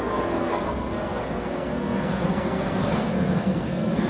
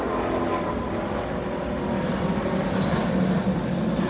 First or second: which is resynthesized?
first